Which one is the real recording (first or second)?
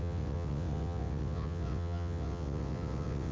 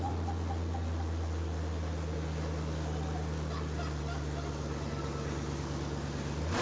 second